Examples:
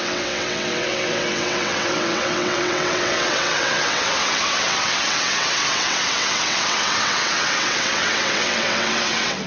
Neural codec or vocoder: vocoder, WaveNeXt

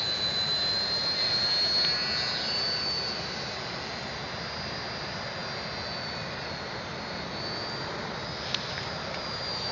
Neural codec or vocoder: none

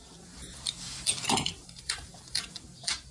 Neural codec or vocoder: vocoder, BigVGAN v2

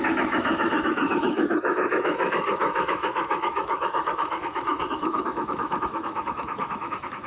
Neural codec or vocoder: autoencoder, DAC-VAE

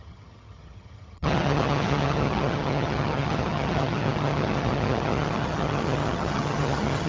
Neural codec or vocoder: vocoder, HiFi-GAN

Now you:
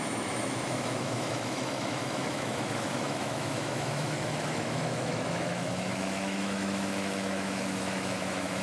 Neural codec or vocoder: autoencoder, DAC-VAE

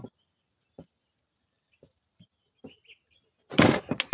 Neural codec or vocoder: none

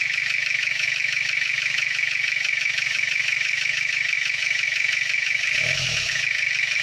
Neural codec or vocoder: autoencoder, DAC-VAE